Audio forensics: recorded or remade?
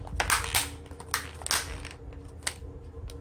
recorded